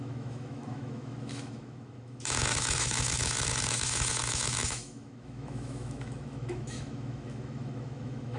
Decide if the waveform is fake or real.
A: fake